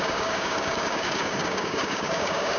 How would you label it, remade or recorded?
remade